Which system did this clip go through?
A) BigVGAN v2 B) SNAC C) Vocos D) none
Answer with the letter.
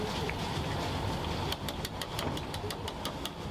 D